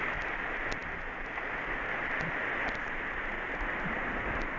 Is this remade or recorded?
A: recorded